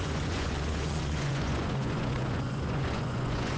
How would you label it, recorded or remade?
remade